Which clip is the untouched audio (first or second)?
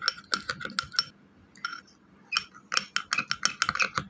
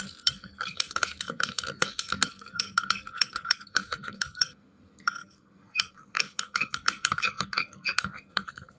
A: first